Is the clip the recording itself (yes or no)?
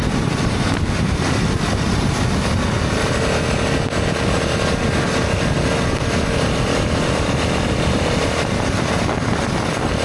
yes